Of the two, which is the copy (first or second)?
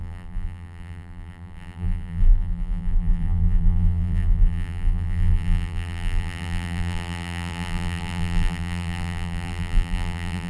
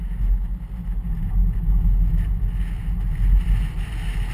first